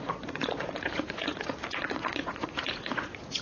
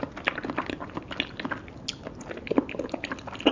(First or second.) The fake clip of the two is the first